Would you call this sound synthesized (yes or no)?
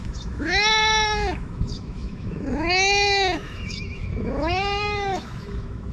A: yes